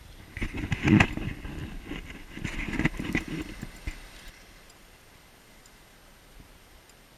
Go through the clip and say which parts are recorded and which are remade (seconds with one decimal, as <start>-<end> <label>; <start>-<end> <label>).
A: 0.0-7.2 recorded